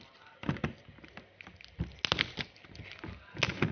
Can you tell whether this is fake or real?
real